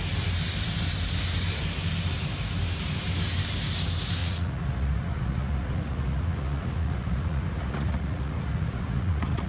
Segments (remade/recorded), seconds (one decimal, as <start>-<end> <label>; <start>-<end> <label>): 0.0-4.2 recorded; 4.2-9.5 remade